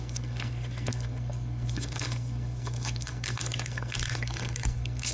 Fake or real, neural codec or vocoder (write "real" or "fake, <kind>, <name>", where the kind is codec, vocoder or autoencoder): fake, codec, SNAC